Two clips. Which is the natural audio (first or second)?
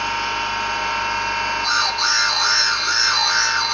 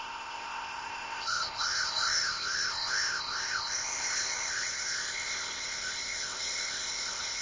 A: first